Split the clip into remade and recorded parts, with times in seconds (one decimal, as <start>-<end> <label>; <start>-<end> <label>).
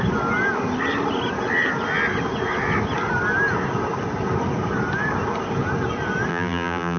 0.0-6.3 recorded; 6.3-7.0 remade